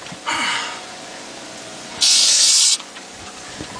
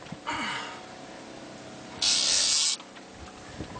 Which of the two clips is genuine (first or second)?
second